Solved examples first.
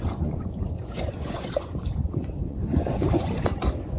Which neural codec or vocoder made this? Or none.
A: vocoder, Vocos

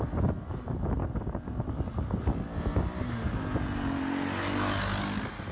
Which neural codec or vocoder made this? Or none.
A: none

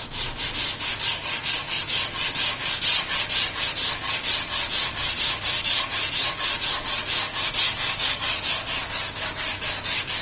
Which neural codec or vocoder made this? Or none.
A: none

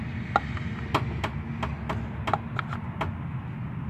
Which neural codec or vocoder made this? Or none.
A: none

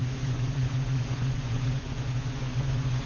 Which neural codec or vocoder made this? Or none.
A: vocoder, Vocos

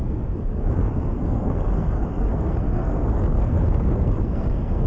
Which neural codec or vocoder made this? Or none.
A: codec, SNAC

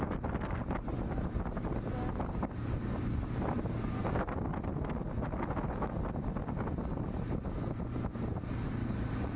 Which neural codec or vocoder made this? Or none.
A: none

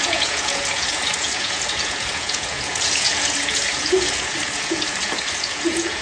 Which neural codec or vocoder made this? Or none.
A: vocoder, Vocos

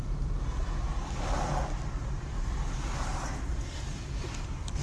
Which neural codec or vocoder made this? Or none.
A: none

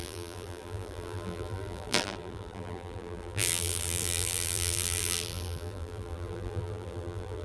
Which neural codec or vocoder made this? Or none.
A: vocoder, BigVGAN v2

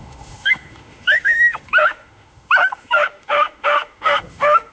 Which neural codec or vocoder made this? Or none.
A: autoencoder, DAC-VAE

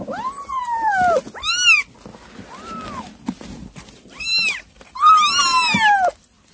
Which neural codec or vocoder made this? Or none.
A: none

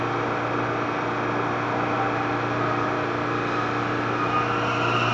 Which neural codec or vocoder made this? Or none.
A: none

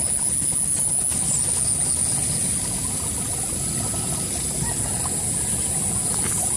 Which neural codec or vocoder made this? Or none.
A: none